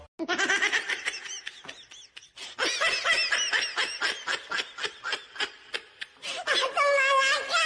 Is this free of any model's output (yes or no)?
yes